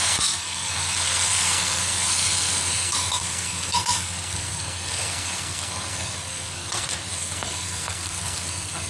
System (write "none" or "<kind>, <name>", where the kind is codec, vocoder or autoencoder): codec, SNAC